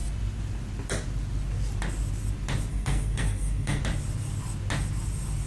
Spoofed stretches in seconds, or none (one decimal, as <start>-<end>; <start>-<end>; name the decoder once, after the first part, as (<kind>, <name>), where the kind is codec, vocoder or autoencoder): 2.7-3.8 (codec, SNAC)